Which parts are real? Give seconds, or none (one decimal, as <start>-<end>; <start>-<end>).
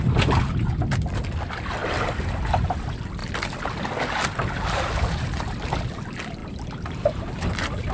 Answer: 0.0-1.8; 2.6-6.4